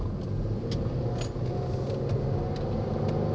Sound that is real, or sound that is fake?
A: real